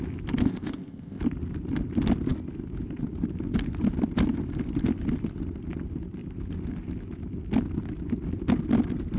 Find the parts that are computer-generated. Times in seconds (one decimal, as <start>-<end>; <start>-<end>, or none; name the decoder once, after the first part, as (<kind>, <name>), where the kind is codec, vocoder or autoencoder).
0.4-1.2 (codec, ZipCodec)